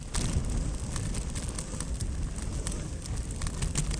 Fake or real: real